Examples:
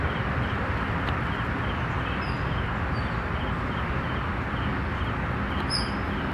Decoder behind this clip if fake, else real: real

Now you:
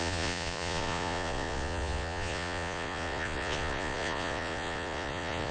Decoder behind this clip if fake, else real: fake, vocoder, Vocos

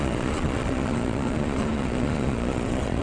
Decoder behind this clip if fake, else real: fake, vocoder, Vocos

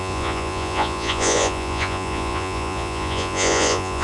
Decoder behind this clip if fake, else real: fake, vocoder, Vocos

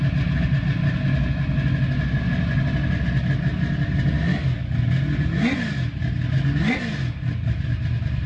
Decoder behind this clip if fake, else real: real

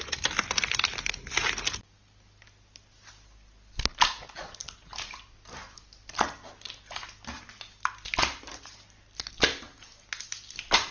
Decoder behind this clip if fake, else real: real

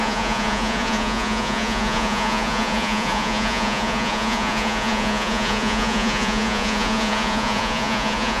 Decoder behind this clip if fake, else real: fake, vocoder, Vocos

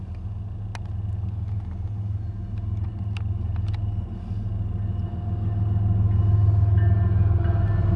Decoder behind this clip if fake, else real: real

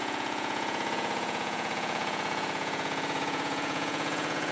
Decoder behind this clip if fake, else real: fake, vocoder, Vocos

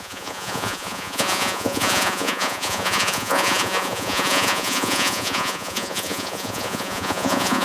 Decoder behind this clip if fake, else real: fake, vocoder, Vocos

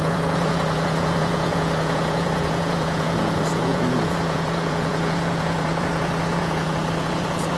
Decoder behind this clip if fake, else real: fake, vocoder, Vocos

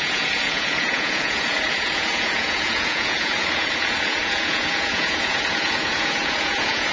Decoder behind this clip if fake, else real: fake, vocoder, Vocos